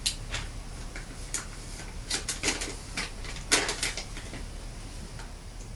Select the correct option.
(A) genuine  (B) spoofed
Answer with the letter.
A